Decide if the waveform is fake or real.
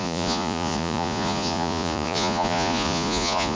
fake